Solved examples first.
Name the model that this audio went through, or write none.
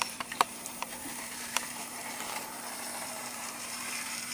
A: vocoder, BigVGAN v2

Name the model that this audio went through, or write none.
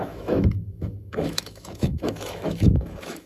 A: autoencoder, DAC-VAE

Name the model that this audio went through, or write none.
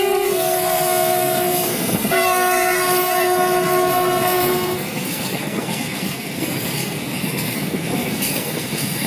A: codec, SNAC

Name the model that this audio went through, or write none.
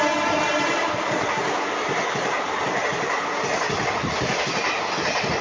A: none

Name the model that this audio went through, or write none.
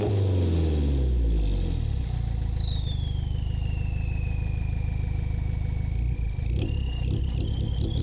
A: none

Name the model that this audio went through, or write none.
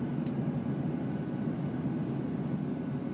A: none